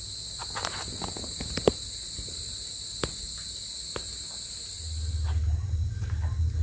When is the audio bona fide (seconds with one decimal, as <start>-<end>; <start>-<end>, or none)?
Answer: 0.0-6.6

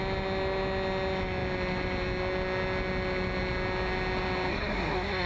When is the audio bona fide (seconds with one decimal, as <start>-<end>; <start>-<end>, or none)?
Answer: 0.0-4.5

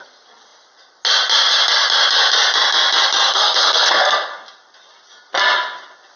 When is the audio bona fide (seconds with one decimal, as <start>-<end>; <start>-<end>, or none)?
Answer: 0.0-3.3; 4.3-6.2

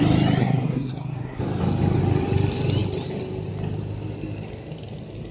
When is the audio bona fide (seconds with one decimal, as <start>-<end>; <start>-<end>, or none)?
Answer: 0.0-0.4; 1.4-5.3

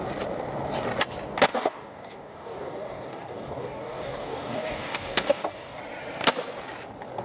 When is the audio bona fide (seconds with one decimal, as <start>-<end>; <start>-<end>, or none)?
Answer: 0.0-1.5; 5.8-7.2